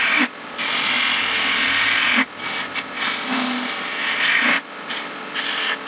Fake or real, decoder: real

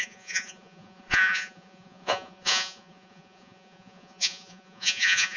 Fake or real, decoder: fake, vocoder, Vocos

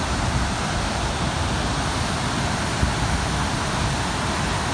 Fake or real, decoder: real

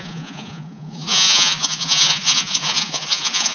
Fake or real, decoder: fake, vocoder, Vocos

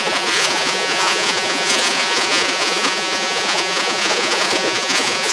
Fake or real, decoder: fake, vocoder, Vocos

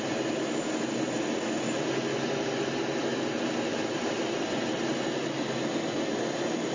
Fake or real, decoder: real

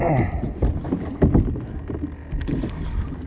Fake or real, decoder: real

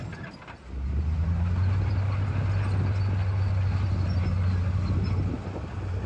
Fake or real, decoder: real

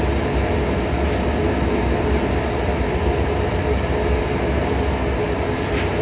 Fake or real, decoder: real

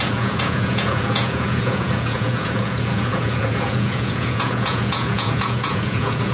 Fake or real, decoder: fake, vocoder, Vocos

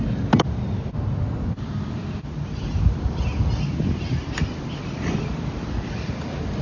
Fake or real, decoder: real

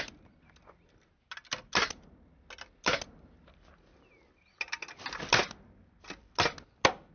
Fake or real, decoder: real